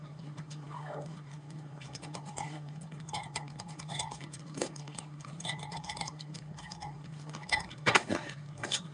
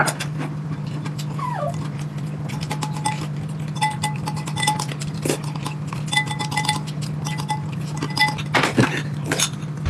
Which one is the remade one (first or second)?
first